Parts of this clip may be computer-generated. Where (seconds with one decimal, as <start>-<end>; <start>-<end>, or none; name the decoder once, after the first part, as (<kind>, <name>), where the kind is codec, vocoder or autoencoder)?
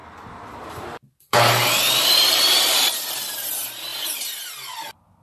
0.0-3.1 (vocoder, BigVGAN v2); 3.9-4.5